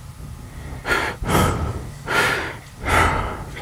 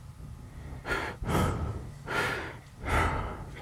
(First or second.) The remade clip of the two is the first